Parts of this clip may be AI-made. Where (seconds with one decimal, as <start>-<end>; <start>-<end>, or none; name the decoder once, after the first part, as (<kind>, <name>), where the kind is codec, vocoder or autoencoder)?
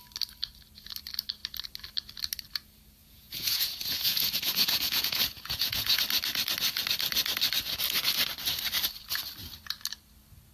3.0-6.0 (vocoder, Vocos)